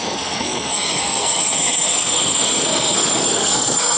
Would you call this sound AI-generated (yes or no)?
yes